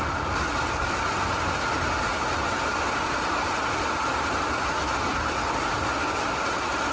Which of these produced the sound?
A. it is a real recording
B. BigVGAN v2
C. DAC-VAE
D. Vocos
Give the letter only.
A